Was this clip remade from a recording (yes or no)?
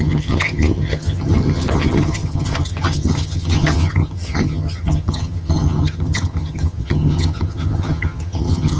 yes